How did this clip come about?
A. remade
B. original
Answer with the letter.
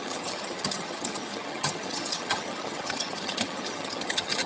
A